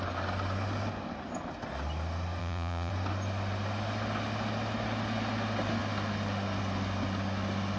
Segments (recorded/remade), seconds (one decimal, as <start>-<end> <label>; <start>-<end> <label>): 0.0-2.4 recorded; 2.4-2.9 remade; 2.9-7.8 recorded